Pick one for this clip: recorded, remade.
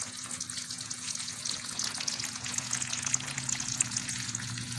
remade